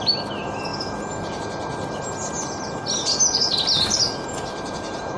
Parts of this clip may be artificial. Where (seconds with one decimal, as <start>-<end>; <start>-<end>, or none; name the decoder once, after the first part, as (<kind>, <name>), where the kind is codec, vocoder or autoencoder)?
none